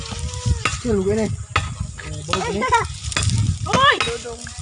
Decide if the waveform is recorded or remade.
recorded